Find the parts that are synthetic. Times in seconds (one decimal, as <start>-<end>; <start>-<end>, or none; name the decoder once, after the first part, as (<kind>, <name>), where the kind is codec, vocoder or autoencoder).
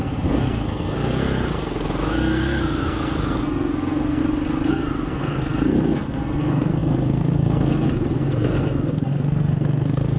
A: 0.0-4.2 (codec, SNAC); 4.7-10.2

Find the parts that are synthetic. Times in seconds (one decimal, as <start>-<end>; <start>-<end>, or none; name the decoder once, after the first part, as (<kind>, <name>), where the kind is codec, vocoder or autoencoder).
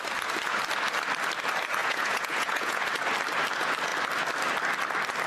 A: 1.8-2.8 (vocoder, Vocos)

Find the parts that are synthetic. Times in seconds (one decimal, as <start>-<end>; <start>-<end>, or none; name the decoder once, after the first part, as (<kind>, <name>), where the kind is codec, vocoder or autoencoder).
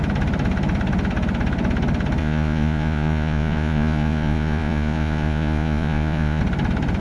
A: 2.2-6.4 (vocoder, Vocos)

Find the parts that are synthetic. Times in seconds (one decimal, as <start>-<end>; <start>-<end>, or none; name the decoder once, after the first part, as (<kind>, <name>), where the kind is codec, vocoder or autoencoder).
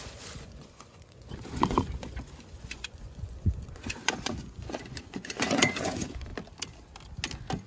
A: 0.0-6.3 (vocoder, Vocos)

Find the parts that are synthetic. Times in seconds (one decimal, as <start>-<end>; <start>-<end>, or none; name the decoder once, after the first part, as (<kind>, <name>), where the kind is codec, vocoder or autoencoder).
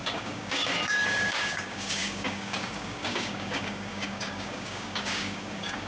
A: 0.0-5.9 (codec, DAC)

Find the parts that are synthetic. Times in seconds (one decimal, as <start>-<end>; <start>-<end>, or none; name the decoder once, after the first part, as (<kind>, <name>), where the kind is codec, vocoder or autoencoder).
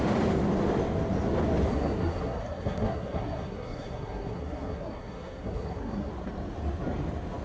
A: 1.7-6.1 (codec, SNAC)